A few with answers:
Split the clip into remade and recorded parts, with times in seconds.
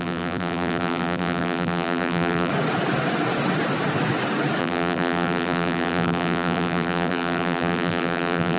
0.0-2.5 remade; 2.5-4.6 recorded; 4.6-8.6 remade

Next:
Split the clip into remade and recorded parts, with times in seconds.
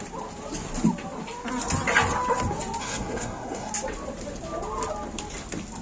0.0-2.8 recorded; 2.8-3.7 remade; 3.7-5.8 recorded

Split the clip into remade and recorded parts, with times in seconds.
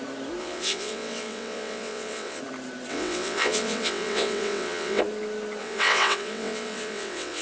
0.0-0.4 recorded; 0.4-2.4 remade; 2.4-2.9 recorded; 2.9-5.0 remade; 5.0-5.6 recorded; 5.6-7.4 remade